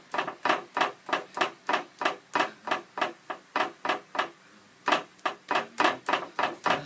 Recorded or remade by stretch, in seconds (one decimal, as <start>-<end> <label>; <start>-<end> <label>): 0.0-6.9 recorded